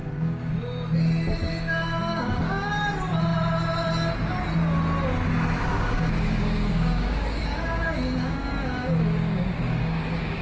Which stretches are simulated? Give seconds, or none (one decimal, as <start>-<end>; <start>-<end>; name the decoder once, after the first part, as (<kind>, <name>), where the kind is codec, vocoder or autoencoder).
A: 0.0-0.5 (codec, DAC); 2.1-2.7; 5.7-10.4

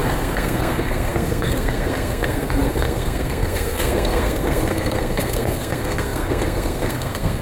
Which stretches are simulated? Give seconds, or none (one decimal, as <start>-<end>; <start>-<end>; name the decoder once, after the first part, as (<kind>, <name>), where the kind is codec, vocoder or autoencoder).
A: 0.0-7.4 (codec, SNAC)

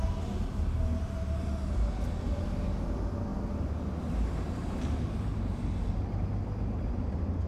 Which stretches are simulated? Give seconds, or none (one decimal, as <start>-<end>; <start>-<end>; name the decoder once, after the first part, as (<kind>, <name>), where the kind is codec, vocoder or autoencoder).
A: none

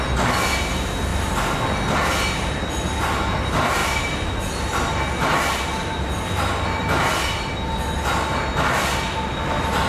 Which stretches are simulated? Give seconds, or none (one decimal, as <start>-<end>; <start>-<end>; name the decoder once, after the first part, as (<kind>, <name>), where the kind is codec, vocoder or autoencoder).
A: 3.8-4.8 (vocoder, BigVGAN v2)

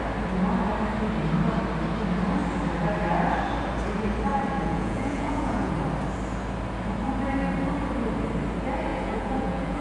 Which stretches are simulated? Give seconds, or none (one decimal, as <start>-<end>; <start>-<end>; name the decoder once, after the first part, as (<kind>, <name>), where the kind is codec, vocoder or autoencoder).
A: 4.3-5.7 (vocoder, Vocos); 8.9-9.8